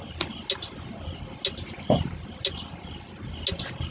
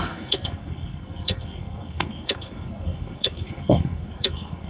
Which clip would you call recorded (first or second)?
first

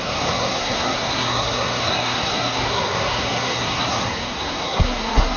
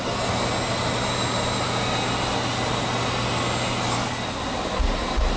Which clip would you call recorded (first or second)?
second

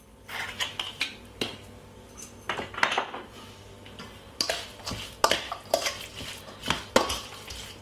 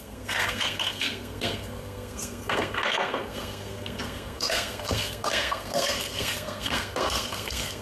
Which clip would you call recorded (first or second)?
first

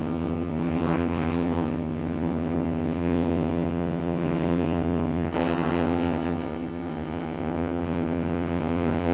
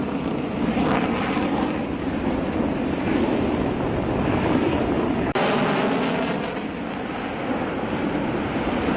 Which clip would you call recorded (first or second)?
second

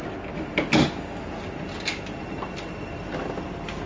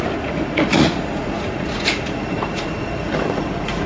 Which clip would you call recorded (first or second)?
first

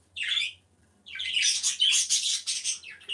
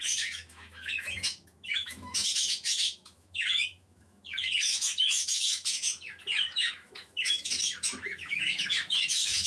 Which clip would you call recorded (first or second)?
first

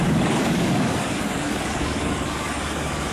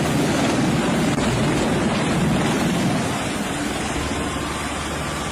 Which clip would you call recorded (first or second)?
second